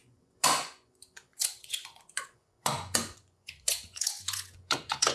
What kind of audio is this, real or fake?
fake